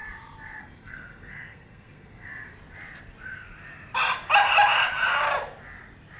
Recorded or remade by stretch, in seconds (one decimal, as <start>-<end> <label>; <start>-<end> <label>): 0.0-0.6 recorded; 0.6-2.3 remade; 2.3-6.2 recorded